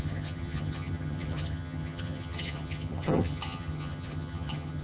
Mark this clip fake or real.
fake